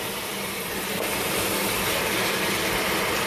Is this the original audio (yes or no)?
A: yes